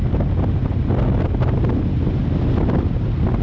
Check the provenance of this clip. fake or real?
real